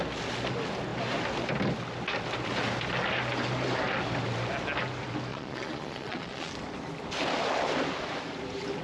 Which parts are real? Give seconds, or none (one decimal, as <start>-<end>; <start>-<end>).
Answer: 0.0-5.3; 6.5-8.8